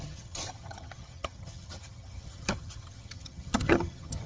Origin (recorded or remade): remade